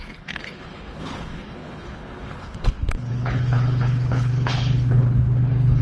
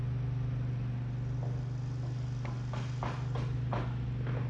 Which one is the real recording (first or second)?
second